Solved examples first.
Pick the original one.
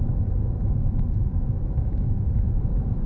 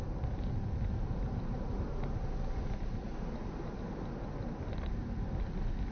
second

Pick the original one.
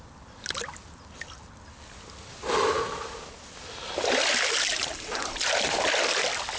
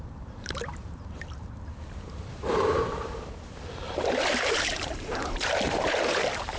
first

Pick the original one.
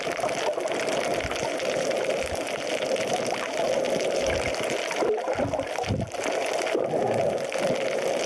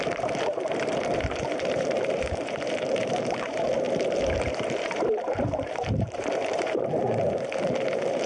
first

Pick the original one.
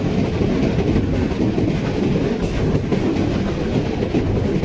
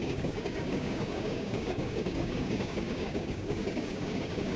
first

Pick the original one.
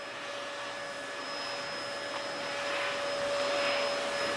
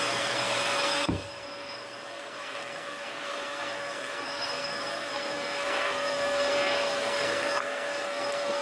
first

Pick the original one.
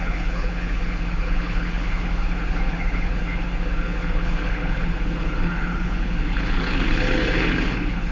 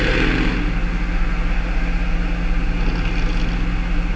second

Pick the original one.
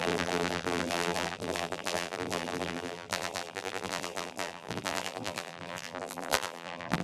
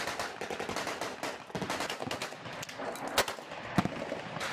second